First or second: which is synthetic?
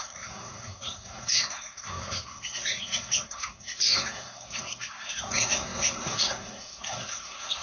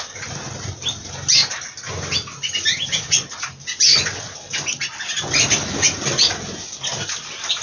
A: first